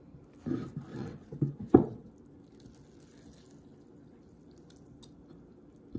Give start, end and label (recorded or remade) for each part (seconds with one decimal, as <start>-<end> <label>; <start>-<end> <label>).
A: 0.0-0.9 recorded; 0.9-2.1 remade; 2.1-6.0 recorded